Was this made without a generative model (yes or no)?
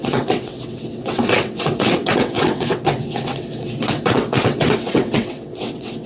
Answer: no